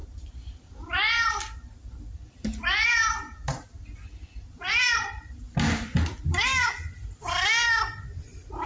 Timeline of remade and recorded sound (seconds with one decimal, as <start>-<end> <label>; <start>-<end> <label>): 0.0-8.7 recorded